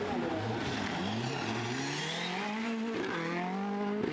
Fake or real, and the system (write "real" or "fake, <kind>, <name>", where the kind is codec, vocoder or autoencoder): real